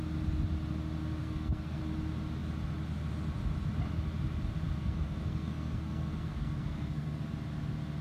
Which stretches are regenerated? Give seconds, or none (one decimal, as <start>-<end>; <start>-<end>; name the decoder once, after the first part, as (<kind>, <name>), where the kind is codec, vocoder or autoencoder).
1.2-1.8 (codec, SNAC); 4.8-7.2